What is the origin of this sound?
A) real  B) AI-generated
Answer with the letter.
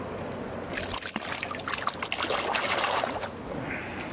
A